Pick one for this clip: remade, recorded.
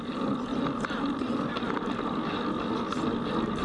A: recorded